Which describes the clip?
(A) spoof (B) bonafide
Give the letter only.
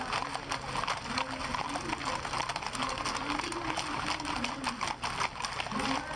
B